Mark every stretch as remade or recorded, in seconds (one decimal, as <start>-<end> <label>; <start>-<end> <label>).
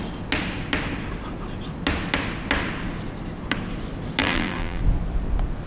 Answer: 0.0-4.2 recorded; 4.2-4.8 remade; 4.8-5.7 recorded